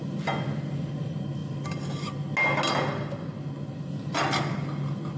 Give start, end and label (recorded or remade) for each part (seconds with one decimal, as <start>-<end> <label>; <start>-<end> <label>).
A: 0.0-5.2 recorded